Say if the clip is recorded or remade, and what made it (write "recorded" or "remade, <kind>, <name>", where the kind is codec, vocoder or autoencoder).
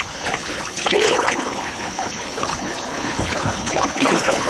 remade, codec, HILCodec